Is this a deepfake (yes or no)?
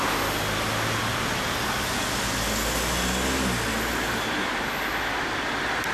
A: no